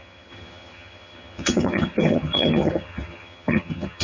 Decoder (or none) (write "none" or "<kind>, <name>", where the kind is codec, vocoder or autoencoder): vocoder, HiFi-GAN